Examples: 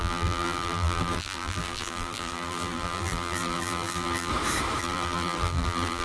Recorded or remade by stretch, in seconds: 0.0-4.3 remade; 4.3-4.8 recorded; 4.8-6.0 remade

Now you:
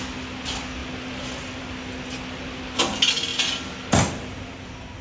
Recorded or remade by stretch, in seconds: 0.0-5.0 recorded